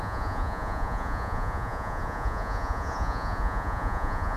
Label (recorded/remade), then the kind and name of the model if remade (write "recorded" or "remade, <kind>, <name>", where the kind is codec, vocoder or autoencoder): remade, vocoder, Vocos